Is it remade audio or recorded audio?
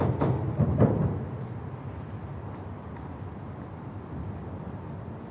recorded